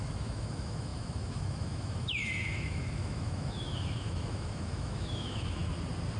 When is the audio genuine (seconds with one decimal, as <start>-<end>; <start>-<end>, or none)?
5.6-6.2